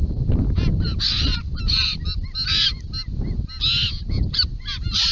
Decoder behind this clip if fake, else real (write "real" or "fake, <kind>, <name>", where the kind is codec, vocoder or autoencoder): real